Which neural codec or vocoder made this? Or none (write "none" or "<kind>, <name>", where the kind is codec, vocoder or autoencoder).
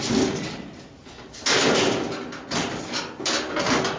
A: none